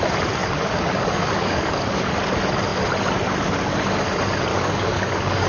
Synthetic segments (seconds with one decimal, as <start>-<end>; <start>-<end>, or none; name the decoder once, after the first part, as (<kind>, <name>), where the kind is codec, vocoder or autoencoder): 0.4-2.1 (codec, DAC); 4.5-5.5